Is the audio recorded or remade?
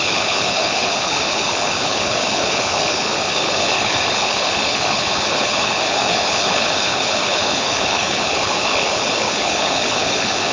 remade